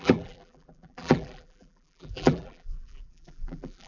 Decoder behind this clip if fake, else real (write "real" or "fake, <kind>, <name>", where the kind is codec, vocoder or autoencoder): fake, vocoder, BigVGAN v2